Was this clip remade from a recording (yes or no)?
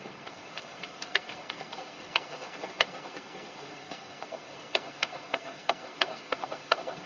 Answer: yes